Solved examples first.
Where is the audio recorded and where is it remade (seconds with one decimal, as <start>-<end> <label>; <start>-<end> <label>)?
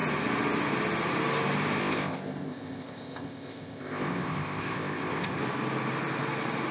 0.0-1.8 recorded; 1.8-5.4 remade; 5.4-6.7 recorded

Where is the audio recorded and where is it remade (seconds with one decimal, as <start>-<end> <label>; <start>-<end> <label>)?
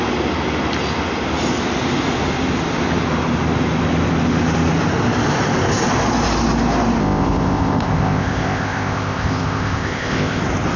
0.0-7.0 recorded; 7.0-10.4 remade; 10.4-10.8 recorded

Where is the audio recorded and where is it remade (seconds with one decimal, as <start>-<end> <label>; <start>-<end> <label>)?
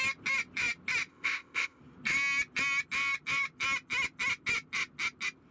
0.0-1.1 recorded; 1.1-1.8 remade; 1.8-5.5 recorded